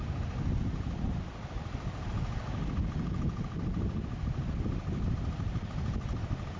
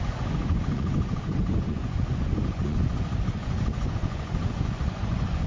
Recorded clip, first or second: first